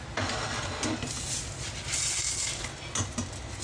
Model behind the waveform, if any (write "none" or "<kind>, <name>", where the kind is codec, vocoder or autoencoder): none